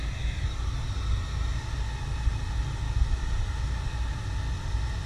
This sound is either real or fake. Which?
real